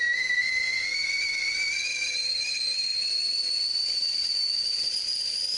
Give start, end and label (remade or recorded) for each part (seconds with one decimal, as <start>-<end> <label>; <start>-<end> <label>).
0.0-5.6 recorded

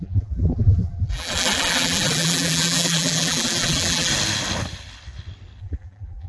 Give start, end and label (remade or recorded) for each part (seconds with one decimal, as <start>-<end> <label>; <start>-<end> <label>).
0.0-4.1 remade; 4.1-5.6 recorded; 5.6-6.3 remade

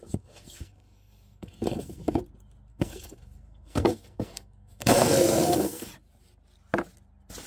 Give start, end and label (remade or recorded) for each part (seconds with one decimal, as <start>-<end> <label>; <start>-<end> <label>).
0.0-2.2 remade; 2.2-2.7 recorded; 2.7-5.9 remade; 5.9-7.5 recorded